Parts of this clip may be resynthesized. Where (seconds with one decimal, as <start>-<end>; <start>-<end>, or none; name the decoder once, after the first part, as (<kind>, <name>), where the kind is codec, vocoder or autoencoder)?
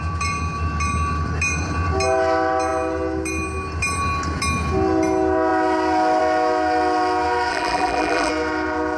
7.5-8.3 (vocoder, BigVGAN v2)